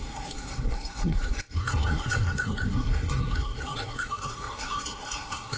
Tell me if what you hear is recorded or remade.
remade